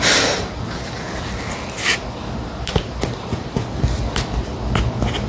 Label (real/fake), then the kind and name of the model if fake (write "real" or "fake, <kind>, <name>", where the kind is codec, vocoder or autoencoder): real